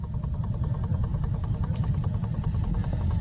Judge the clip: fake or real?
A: real